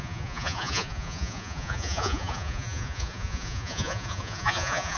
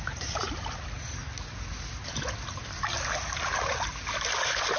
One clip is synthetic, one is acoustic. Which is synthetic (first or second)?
first